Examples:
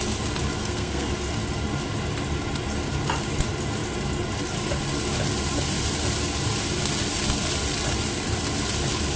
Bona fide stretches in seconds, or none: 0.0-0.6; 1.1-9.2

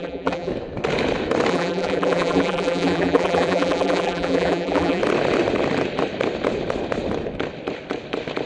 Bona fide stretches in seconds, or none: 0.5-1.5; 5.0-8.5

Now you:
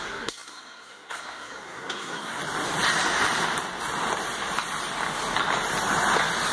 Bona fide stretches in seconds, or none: 2.4-6.5

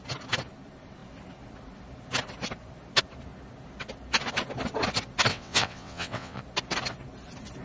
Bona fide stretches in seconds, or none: 0.0-5.3; 6.4-7.6

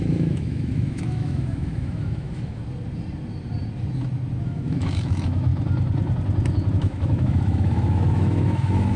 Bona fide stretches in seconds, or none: 2.6-4.4; 5.5-6.7